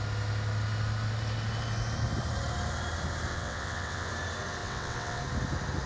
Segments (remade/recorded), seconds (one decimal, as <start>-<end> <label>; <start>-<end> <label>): 0.0-3.3 recorded; 3.3-4.1 remade; 4.1-4.6 recorded; 4.6-5.2 remade; 5.2-5.9 recorded